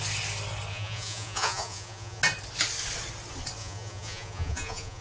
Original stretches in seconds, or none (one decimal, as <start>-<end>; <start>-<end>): 0.0-0.7; 2.2-3.6